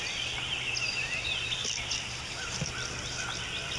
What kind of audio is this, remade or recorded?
recorded